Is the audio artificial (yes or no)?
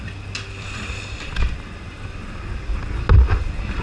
no